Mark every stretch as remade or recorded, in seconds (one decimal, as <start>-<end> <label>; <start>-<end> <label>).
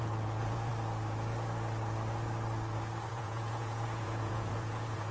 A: 0.0-0.7 remade; 0.7-3.1 recorded; 3.1-5.1 remade